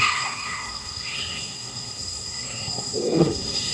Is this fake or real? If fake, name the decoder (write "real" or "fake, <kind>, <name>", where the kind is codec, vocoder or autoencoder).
fake, codec, SNAC